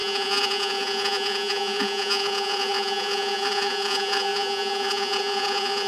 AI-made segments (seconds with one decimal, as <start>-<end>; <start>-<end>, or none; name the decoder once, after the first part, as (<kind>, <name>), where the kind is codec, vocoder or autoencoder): 0.0-5.9 (vocoder, Vocos)

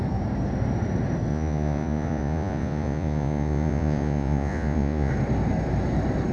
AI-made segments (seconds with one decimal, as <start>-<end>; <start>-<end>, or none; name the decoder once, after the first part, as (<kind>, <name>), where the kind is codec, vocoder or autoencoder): 1.3-5.1 (vocoder, Vocos)

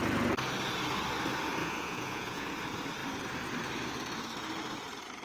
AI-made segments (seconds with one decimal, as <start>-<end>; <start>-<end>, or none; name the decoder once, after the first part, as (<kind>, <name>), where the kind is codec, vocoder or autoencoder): 1.6-2.5 (vocoder, Vocos)

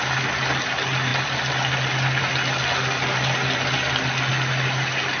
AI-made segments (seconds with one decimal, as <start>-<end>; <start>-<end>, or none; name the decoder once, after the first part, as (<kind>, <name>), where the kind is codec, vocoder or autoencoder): none

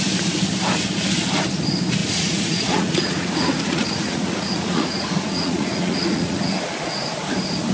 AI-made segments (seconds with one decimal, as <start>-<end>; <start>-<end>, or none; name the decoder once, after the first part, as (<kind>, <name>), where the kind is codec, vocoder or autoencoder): 2.0-6.5 (vocoder, Vocos)

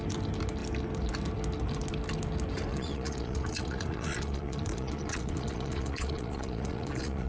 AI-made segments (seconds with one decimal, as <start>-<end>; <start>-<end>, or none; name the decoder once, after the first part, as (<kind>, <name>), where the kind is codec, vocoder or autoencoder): 2.7-7.3 (vocoder, Vocos)

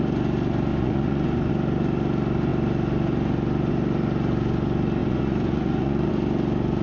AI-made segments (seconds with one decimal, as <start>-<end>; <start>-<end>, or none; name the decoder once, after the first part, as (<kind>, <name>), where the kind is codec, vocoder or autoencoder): 0.7-1.5 (vocoder, Vocos); 5.0-6.1